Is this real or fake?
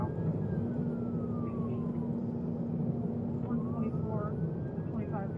real